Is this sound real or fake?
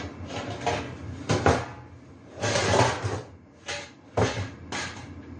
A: real